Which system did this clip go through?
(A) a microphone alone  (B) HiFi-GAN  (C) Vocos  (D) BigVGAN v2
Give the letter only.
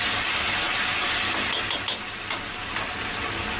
A